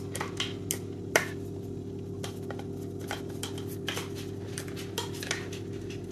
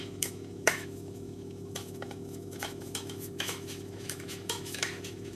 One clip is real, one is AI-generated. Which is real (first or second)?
first